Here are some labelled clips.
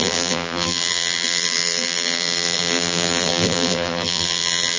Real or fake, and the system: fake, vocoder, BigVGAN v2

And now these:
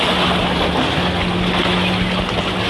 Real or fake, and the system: real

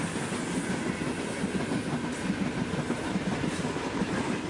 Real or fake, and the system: real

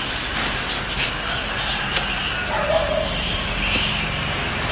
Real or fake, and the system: real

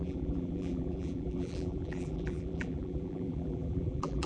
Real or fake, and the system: fake, vocoder, BigVGAN v2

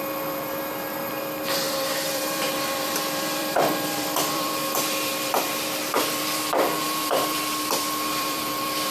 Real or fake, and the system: fake, vocoder, BigVGAN v2